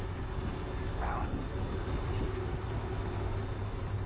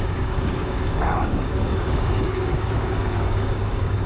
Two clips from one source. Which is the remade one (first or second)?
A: second